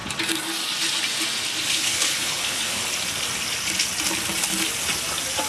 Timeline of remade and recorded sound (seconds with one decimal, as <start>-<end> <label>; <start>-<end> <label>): 0.0-1.7 recorded; 1.7-2.8 remade; 2.8-5.5 recorded